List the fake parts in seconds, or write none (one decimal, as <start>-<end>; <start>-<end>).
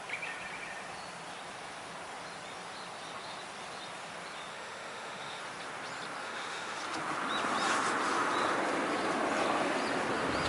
4.5-5.4; 6.2-6.8